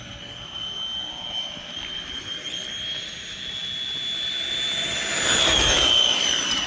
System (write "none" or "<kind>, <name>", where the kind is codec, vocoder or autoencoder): none